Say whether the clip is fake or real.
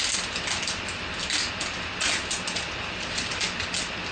real